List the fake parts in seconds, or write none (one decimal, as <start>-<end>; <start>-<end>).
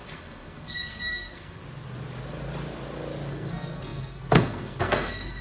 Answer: 0.0-1.6; 3.3-5.4